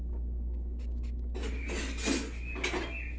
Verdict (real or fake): real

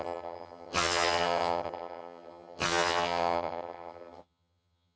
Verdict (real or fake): fake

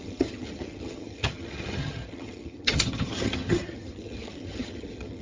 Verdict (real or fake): fake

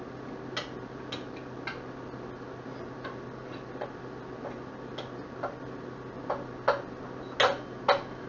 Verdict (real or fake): real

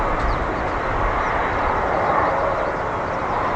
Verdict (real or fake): real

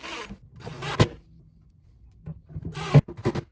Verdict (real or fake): real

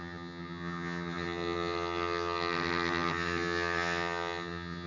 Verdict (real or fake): fake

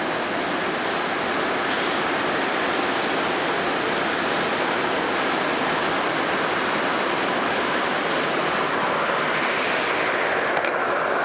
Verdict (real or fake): real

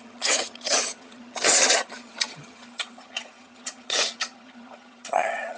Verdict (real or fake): fake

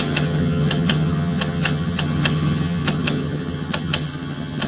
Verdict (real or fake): fake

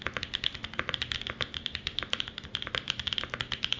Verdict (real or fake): real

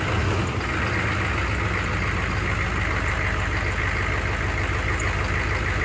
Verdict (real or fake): real